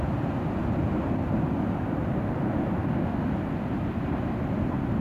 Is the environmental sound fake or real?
real